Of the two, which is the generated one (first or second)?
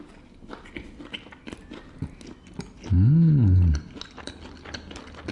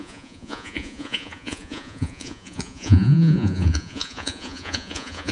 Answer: second